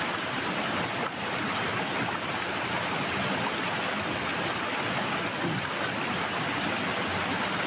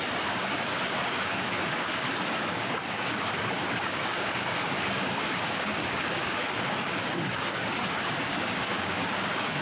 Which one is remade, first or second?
second